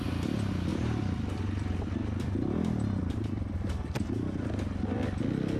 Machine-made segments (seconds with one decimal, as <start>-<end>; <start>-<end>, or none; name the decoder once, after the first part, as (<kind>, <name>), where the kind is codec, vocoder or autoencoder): 0.7-4.1 (vocoder, BigVGAN v2)